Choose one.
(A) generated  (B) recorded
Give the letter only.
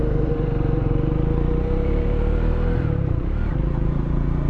A